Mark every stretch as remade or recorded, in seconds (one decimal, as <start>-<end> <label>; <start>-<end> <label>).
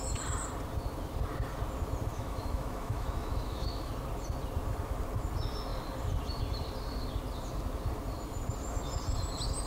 0.0-2.1 recorded; 2.1-3.9 remade; 3.9-9.7 recorded